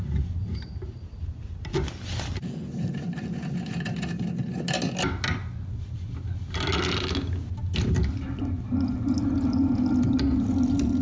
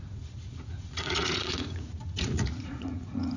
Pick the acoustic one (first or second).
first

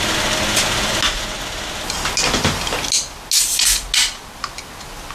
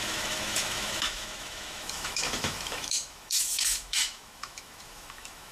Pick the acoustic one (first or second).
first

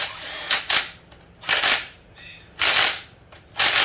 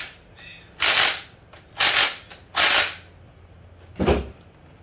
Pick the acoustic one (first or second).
second